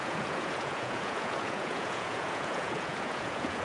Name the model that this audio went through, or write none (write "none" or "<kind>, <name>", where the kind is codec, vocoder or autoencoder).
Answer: vocoder, Vocos